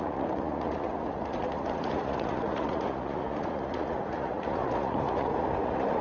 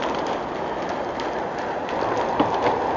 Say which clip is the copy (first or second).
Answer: first